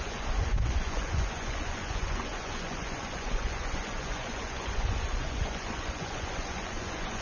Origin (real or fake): fake